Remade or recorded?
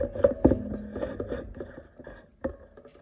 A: recorded